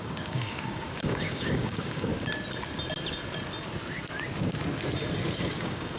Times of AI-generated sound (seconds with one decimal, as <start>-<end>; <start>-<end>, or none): 0.0-2.1; 5.4-6.0